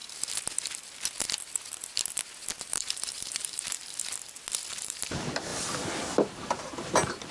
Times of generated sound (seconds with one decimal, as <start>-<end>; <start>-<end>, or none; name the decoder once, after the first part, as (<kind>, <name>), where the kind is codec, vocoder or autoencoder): 2.6-3.8 (vocoder, BigVGAN v2); 4.7-5.5; 6.2-7.3